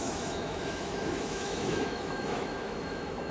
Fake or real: fake